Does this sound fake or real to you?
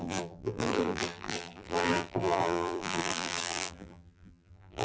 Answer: fake